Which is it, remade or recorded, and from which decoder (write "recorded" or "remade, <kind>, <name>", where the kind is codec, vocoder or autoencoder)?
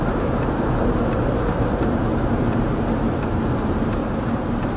remade, vocoder, BigVGAN v2